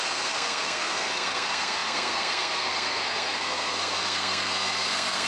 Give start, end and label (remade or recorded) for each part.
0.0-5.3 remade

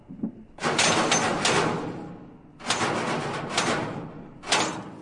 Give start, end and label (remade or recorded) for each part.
0.0-5.0 recorded

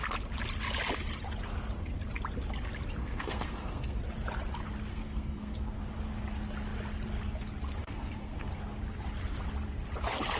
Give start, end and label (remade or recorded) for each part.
0.0-3.0 recorded; 3.0-4.0 remade; 4.0-4.9 recorded; 4.9-5.8 remade; 5.8-7.8 recorded; 7.8-8.5 remade; 8.5-10.4 recorded

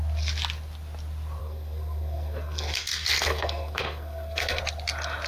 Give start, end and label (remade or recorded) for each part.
0.0-1.4 recorded; 1.4-4.6 remade; 4.6-5.3 recorded